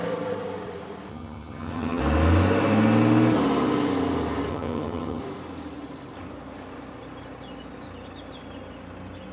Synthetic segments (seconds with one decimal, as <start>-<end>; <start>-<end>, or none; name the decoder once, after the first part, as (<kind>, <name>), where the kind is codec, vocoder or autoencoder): 1.1-2.0 (vocoder, HiFi-GAN); 4.5-5.2